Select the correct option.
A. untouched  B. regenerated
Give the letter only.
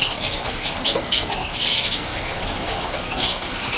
B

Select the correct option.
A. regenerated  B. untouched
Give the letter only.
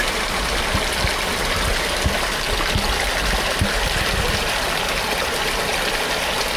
B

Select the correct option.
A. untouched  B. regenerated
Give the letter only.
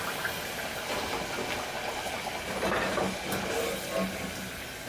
A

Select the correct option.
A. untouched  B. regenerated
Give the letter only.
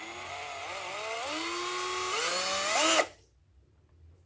A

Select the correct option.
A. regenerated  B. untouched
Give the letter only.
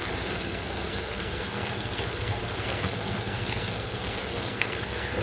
A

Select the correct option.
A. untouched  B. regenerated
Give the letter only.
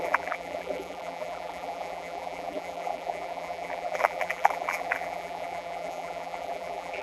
B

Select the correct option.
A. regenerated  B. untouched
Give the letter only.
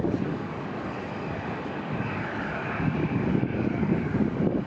A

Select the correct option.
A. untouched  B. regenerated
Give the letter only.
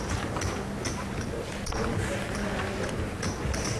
A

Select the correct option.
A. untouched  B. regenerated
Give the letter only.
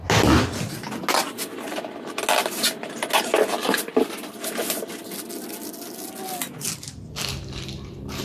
A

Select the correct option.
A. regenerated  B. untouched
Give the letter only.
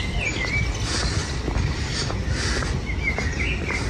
B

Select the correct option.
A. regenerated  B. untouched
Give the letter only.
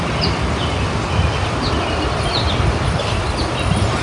B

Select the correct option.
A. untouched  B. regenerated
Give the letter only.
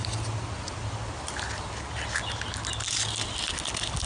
A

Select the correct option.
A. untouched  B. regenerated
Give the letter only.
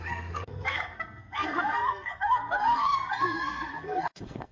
B